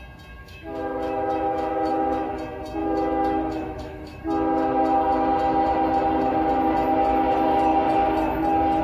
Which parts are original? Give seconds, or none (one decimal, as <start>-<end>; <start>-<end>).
0.0-0.4; 2.3-2.8; 4.2-8.8